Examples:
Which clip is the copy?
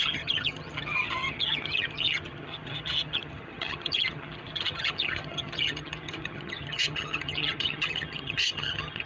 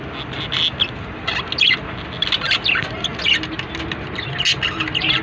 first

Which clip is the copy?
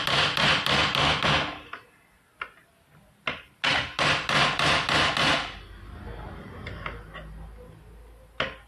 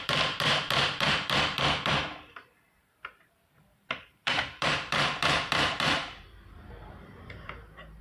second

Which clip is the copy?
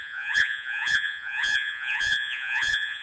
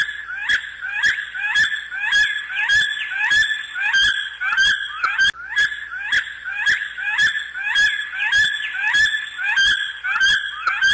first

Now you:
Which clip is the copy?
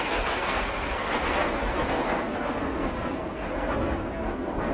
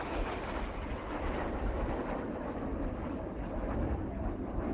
first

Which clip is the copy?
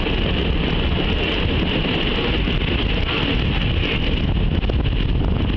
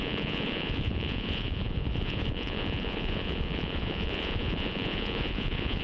second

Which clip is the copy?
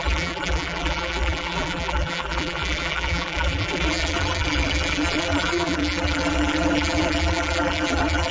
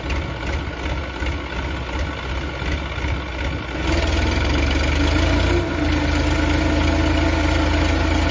first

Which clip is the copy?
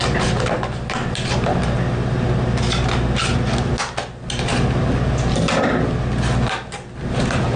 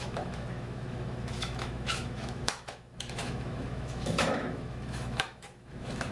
second